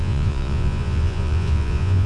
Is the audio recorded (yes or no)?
no